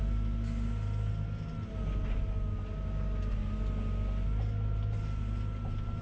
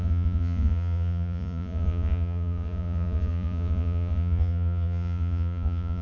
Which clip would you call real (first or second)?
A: first